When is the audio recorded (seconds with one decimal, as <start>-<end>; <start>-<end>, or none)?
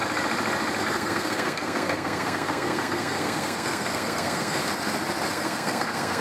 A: 0.0-0.8; 4.6-5.3